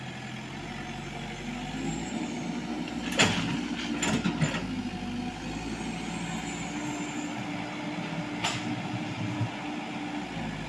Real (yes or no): yes